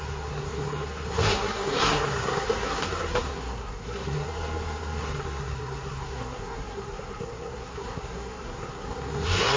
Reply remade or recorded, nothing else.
remade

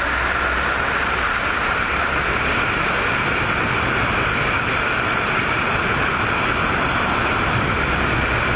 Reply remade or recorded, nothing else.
recorded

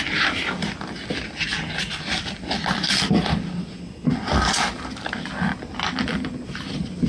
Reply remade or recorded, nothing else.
recorded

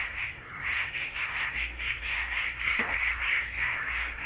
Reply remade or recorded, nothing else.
remade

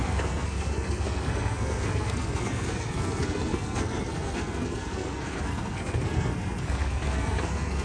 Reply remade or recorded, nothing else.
remade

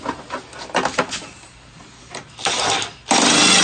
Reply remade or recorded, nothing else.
recorded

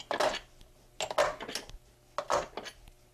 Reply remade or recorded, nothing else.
recorded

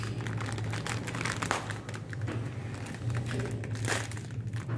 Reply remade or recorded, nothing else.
recorded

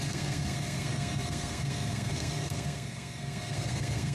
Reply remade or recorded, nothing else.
remade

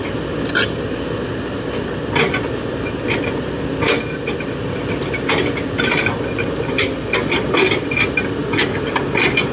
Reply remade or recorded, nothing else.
recorded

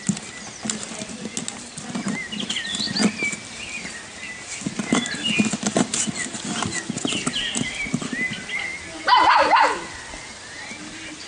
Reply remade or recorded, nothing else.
recorded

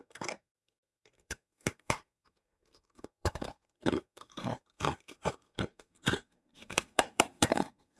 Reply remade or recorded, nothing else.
remade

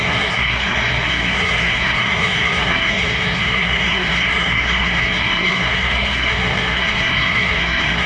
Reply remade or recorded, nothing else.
remade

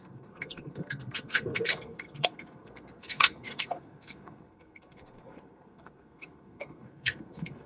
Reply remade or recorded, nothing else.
remade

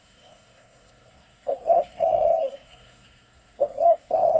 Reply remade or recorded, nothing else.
remade